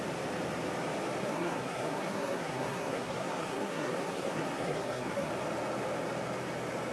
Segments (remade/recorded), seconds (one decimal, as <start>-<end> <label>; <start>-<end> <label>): 0.0-1.2 recorded; 1.2-5.3 remade; 5.3-6.9 recorded